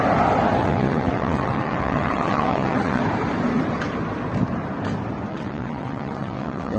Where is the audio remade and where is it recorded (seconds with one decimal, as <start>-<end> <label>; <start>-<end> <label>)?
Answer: 0.0-0.6 recorded; 0.6-3.0 remade; 3.0-5.3 recorded; 5.3-6.8 remade